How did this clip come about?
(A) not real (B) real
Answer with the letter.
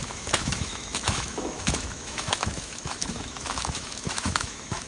A